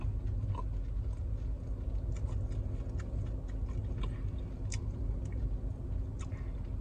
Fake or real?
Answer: real